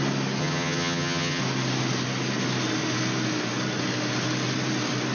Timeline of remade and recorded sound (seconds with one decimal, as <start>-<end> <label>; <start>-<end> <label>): 0.0-0.4 recorded; 0.4-1.4 remade; 1.4-5.1 recorded